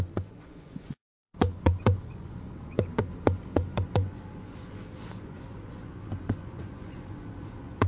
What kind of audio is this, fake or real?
fake